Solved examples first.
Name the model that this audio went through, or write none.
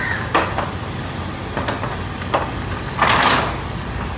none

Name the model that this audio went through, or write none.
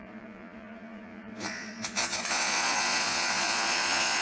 vocoder, Vocos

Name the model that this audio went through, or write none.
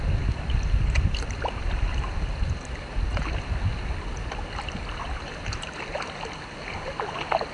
none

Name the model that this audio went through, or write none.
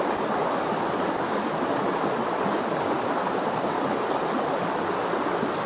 none